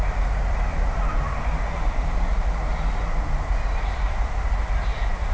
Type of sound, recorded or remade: recorded